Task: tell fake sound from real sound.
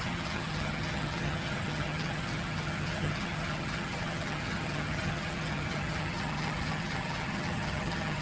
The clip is fake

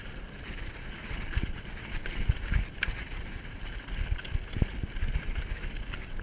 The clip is real